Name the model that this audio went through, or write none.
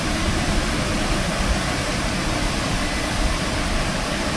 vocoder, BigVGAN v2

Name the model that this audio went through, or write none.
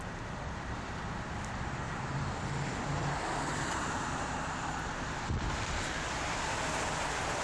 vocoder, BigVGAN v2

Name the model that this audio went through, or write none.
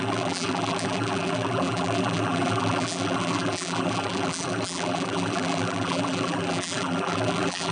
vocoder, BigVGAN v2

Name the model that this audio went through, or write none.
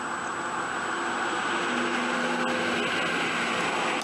none